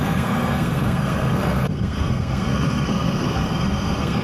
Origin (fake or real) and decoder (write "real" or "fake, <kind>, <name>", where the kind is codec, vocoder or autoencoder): fake, codec, SNAC